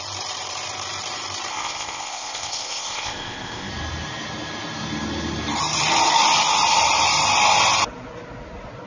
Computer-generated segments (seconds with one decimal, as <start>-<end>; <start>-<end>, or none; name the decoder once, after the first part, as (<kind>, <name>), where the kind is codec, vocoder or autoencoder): 1.5-3.7 (codec, ZipCodec)